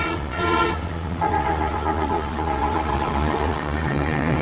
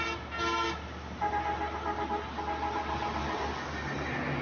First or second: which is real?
second